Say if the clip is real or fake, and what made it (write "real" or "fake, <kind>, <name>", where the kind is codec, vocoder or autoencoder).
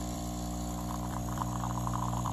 fake, vocoder, BigVGAN v2